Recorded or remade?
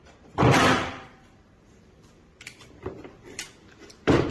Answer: remade